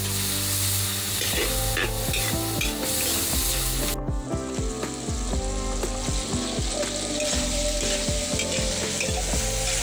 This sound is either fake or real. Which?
real